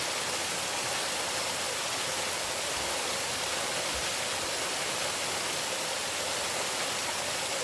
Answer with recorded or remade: recorded